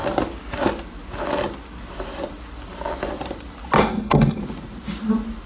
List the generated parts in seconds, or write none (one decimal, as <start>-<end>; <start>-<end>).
3.8-4.4